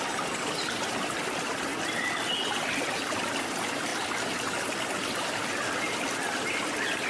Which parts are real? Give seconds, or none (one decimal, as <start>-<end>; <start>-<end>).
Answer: 0.0-7.1